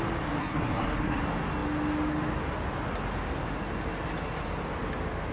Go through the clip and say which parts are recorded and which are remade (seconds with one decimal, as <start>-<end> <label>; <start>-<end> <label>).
0.0-0.4 recorded; 0.4-1.2 remade; 1.2-5.3 recorded